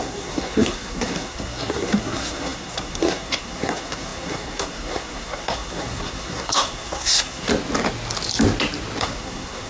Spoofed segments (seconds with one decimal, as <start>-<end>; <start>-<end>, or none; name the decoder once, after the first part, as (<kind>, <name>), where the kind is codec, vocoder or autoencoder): 0.0-7.5 (codec, SNAC); 9.0-9.7